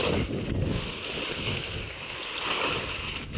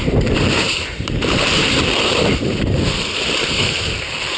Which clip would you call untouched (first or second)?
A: first